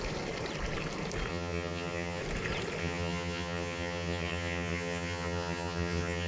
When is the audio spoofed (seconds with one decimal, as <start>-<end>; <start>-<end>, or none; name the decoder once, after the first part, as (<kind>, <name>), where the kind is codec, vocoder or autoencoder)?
1.3-2.2 (vocoder, HiFi-GAN); 2.8-6.3